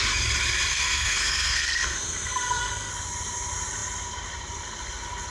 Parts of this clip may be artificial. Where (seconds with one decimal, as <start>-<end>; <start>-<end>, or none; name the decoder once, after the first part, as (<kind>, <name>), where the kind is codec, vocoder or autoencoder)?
0.7-2.9 (codec, SNAC)